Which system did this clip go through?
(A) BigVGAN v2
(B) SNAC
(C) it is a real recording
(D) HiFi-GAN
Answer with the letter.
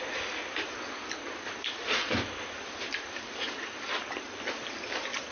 C